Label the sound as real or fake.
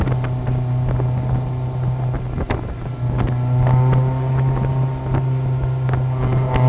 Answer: real